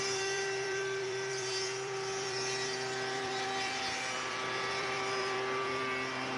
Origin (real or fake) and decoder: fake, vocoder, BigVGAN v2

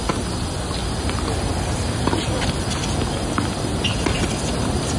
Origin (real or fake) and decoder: real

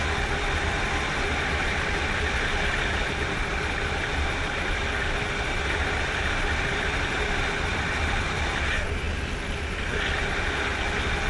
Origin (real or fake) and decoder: real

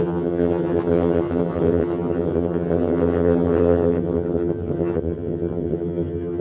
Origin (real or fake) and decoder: fake, vocoder, HiFi-GAN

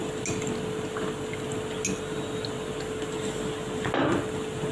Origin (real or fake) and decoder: real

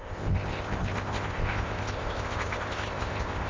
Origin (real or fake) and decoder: fake, codec, ZipCodec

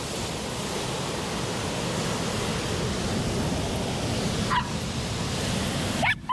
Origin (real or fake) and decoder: real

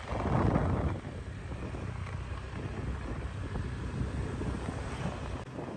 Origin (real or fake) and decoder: real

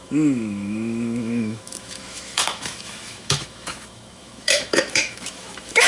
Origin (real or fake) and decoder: fake, autoencoder, DAC-VAE